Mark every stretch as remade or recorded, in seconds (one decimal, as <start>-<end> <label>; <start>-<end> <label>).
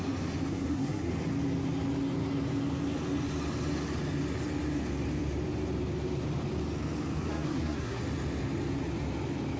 0.0-0.5 recorded; 0.5-1.1 remade; 1.1-7.3 recorded; 7.3-8.0 remade; 8.0-9.6 recorded